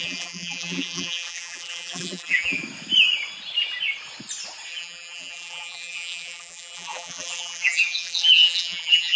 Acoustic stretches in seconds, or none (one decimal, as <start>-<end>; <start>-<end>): 2.6-4.7